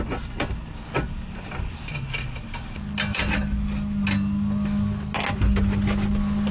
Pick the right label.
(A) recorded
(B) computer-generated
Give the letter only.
A